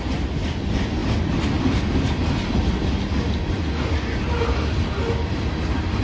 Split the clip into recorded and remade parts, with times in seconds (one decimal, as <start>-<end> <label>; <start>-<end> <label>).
0.0-6.0 recorded